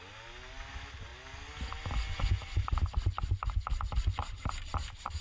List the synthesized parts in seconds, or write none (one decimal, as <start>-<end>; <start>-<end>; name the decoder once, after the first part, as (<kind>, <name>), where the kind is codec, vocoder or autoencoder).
none